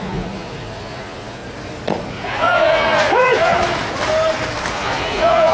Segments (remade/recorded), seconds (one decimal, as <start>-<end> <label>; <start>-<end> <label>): 0.0-1.4 remade; 1.4-2.1 recorded; 2.1-3.5 remade; 3.5-4.7 recorded; 4.7-5.5 remade

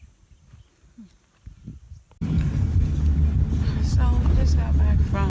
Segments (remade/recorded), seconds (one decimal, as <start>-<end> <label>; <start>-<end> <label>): 0.0-5.3 recorded